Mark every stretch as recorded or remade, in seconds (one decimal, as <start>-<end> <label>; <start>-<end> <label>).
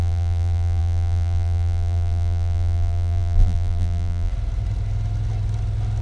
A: 0.0-4.3 remade; 4.3-6.0 recorded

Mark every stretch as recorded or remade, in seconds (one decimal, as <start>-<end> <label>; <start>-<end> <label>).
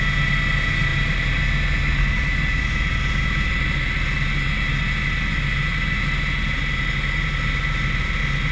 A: 0.0-8.5 recorded